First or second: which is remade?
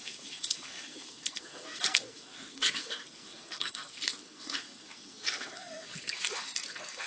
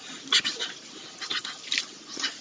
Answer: first